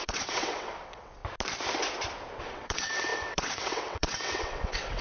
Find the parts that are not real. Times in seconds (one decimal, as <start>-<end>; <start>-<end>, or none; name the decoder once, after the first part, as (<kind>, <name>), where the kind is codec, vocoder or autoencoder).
0.0-1.2 (vocoder, WaveNeXt); 2.4-5.0